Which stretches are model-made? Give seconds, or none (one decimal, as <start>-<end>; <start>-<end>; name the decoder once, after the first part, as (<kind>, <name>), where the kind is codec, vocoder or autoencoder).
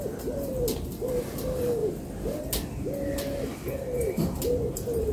none